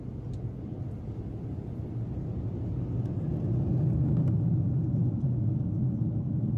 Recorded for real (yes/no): yes